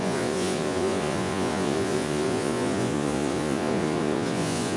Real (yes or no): no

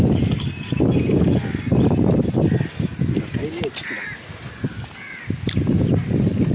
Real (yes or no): yes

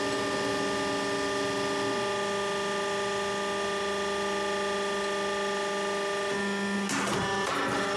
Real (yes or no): yes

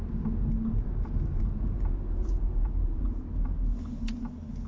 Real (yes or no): yes